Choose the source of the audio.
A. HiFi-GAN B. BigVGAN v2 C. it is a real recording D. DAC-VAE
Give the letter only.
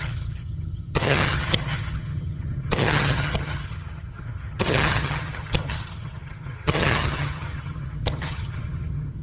A